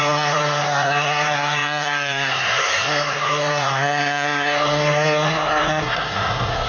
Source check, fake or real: fake